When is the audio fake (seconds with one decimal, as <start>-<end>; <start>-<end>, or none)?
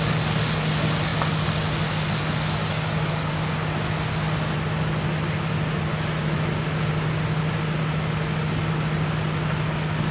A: 2.6-3.3